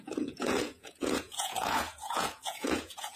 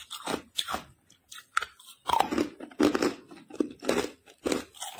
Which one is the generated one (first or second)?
first